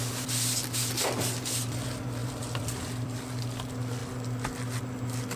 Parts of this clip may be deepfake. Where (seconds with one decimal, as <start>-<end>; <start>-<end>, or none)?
2.2-3.4